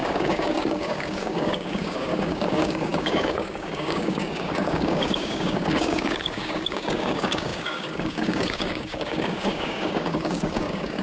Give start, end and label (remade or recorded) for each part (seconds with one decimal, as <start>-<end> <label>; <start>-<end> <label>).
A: 0.0-11.0 remade